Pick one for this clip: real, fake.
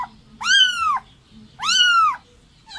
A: real